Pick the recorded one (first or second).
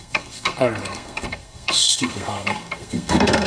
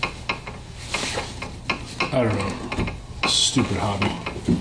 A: second